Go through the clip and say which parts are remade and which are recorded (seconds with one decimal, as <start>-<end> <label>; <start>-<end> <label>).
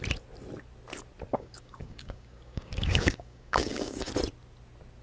0.0-1.3 recorded; 1.3-4.1 remade; 4.1-5.0 recorded